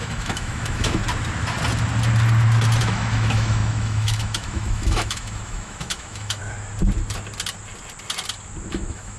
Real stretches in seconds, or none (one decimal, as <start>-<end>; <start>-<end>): 1.0-2.8; 6.4-8.7